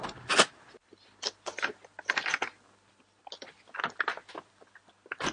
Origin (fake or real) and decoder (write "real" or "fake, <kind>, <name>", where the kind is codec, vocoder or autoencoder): real